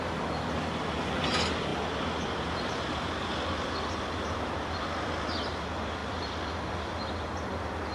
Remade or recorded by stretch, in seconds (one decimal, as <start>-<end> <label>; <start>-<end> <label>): 0.0-7.9 recorded